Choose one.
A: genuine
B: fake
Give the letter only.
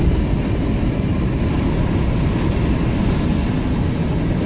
A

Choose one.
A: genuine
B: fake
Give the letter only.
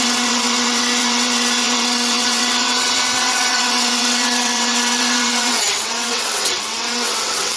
B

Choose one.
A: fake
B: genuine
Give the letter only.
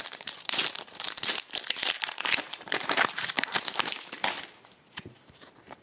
A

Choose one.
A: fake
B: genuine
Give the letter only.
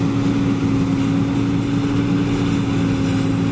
B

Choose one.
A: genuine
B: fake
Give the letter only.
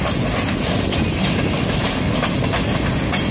A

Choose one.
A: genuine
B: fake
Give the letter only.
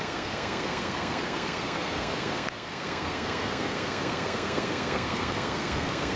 B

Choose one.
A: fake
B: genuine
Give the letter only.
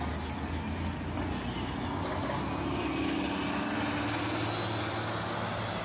B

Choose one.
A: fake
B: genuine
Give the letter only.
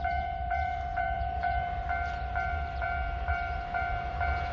A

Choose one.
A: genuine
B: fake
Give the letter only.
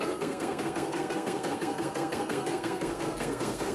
B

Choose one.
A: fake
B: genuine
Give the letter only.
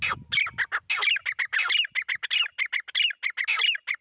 B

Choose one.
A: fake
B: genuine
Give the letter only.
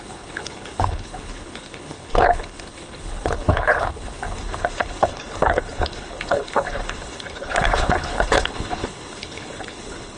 A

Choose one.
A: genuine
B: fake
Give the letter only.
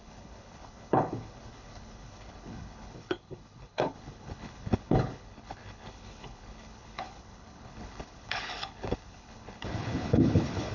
B